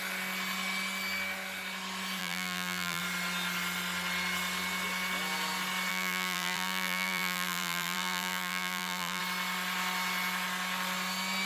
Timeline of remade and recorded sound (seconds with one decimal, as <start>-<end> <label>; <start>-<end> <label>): 0.0-2.2 recorded; 2.2-3.0 remade; 3.0-5.9 recorded; 5.9-9.2 remade; 9.2-11.5 recorded